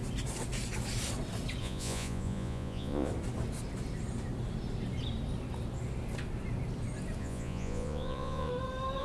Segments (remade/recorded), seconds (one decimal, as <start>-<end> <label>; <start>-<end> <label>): 0.0-1.6 recorded; 1.6-3.1 remade; 3.1-7.2 recorded; 7.2-8.5 remade; 8.5-9.0 recorded